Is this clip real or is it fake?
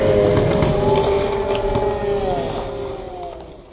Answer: real